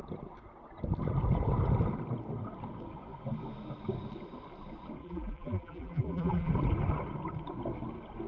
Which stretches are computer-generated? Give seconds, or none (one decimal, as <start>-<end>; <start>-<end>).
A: 5.0-6.5